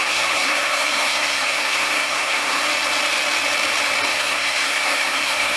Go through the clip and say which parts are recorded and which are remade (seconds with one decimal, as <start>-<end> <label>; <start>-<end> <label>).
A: 0.0-2.6 remade; 2.6-4.1 recorded; 4.1-5.6 remade